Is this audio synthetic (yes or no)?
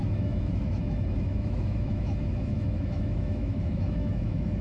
yes